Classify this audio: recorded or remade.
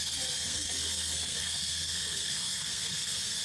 remade